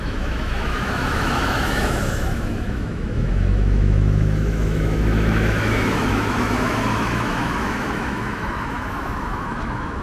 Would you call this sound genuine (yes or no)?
no